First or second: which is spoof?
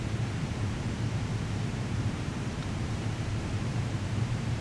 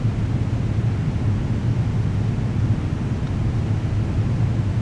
first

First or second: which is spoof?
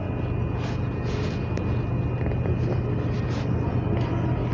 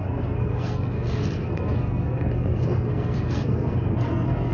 second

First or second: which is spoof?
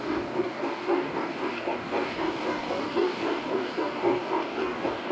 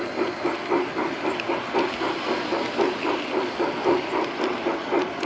first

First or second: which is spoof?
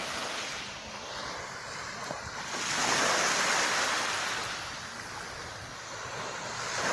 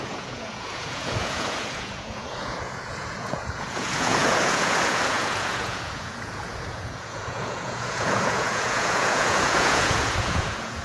second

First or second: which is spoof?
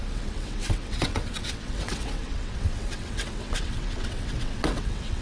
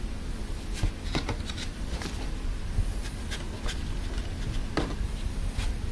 first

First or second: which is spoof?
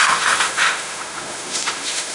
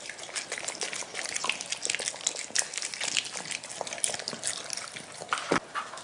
first